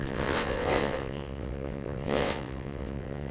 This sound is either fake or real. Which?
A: fake